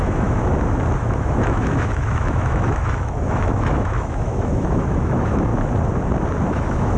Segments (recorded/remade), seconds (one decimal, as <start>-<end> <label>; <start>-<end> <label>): 0.0-0.4 remade; 0.4-1.0 recorded; 1.0-5.5 remade; 5.5-6.5 recorded; 6.5-7.0 remade